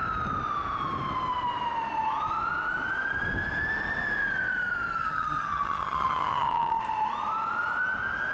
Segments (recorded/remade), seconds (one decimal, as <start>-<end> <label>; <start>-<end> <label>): 0.0-5.0 recorded; 5.0-6.8 remade; 6.8-8.3 recorded